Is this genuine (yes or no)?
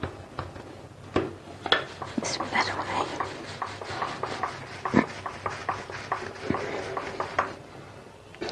yes